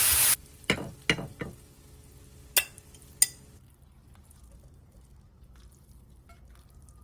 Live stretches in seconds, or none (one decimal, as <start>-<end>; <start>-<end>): 0.0-7.0